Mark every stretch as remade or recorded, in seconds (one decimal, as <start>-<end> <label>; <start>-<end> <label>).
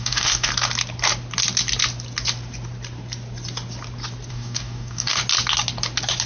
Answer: 0.0-0.5 remade; 0.5-4.3 recorded; 4.3-5.2 remade; 5.2-6.3 recorded